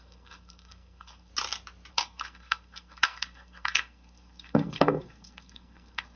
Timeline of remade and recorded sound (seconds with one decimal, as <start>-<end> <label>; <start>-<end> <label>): 0.0-1.3 remade; 1.3-1.9 recorded; 1.9-6.2 remade